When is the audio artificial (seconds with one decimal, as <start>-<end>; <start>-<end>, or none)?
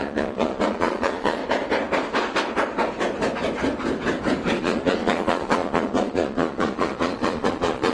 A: 0.0-1.4; 4.6-7.9